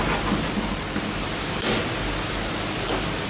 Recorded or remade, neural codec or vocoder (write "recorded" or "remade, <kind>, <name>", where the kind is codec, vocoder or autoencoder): recorded